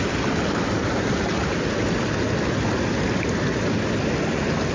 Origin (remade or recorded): recorded